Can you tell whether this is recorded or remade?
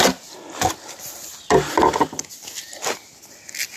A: recorded